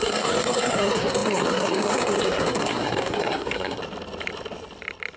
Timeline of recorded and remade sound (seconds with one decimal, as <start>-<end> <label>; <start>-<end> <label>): 0.0-3.8 remade; 3.8-5.2 recorded